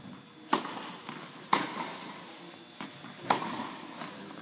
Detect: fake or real real